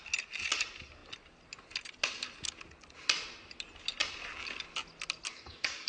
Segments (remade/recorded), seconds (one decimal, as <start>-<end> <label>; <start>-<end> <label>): 0.0-5.3 recorded; 5.3-5.9 remade